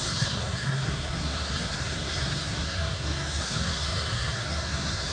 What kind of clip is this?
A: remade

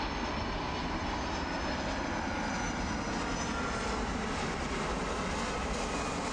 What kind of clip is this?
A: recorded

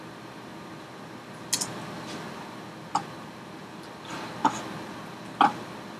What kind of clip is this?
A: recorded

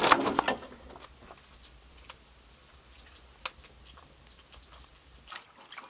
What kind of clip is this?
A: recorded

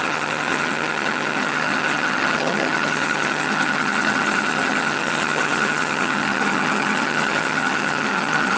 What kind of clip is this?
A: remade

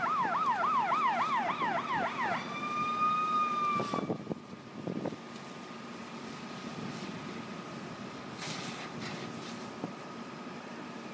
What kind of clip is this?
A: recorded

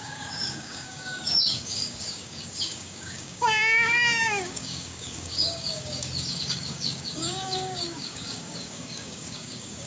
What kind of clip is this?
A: remade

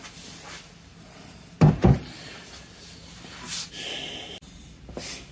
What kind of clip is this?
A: recorded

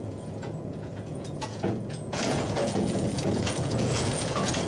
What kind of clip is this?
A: remade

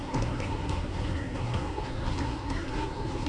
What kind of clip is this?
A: remade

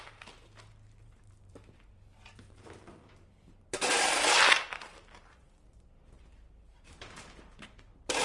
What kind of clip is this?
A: remade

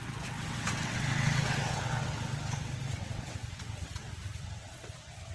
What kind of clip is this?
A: remade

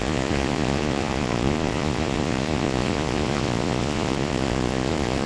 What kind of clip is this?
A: remade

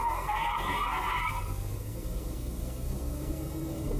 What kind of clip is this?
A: remade